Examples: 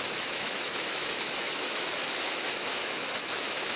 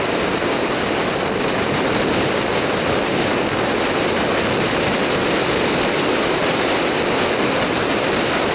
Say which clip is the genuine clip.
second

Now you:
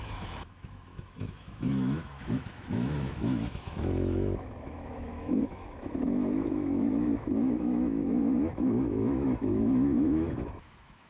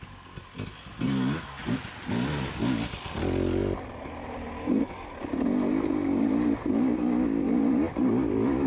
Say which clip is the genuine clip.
second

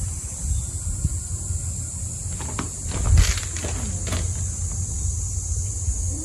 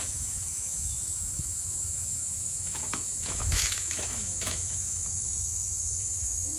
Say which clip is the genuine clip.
first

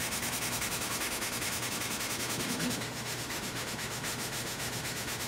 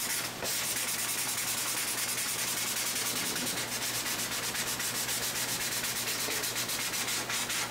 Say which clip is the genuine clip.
second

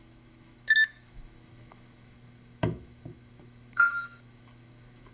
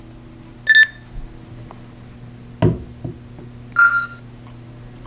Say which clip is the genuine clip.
second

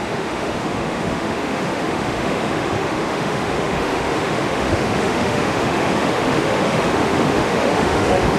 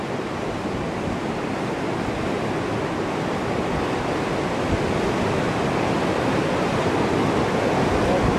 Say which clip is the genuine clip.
second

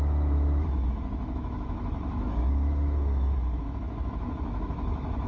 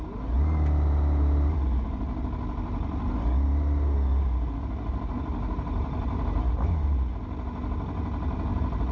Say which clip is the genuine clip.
second